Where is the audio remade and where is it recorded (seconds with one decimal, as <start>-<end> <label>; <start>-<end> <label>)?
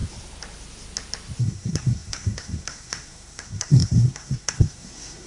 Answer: 0.0-1.4 recorded; 1.4-5.3 remade